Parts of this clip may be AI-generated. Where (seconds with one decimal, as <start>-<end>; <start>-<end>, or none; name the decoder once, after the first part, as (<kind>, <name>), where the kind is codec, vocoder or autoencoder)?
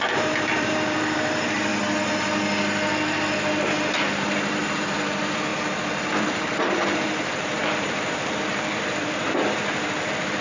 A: 0.0-1.7 (vocoder, BigVGAN v2); 4.1-5.5; 6.7-10.4